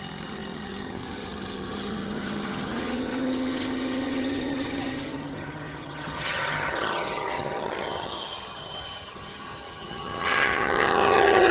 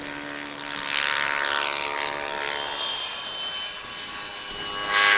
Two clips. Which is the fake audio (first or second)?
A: first